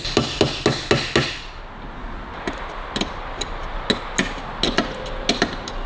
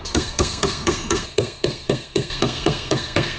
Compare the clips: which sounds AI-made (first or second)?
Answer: second